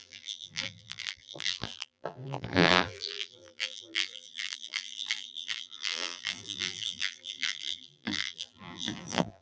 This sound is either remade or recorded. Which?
remade